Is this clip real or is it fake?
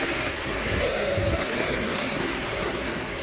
fake